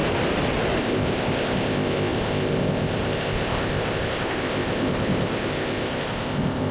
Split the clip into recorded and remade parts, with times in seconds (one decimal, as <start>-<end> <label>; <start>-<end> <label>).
0.0-0.8 recorded; 0.8-6.7 remade

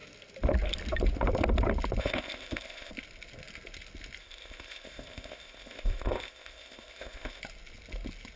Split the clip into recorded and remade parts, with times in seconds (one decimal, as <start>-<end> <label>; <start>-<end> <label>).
0.0-2.0 recorded; 2.0-2.9 remade; 2.9-4.2 recorded; 4.2-7.4 remade; 7.4-8.4 recorded

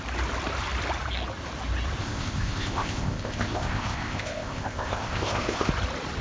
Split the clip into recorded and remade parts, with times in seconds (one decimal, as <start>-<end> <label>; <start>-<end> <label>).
0.0-2.0 recorded; 2.0-5.7 remade; 5.7-6.2 recorded